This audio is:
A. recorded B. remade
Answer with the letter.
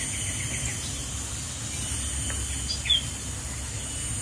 A